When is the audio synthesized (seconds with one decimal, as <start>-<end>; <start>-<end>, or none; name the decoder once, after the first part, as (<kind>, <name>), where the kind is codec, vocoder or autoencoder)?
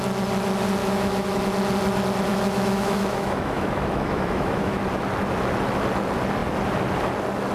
0.8-1.4 (autoencoder, DAC-VAE); 2.3-4.8